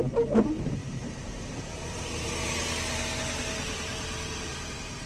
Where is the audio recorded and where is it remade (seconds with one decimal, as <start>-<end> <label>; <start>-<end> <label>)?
0.0-0.8 recorded; 0.8-2.3 remade; 2.3-5.1 recorded